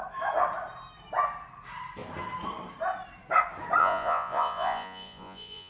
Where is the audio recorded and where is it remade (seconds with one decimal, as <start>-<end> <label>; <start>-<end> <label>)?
0.0-3.8 recorded; 3.8-5.7 remade